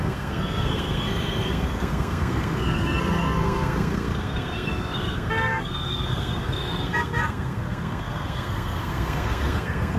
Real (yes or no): no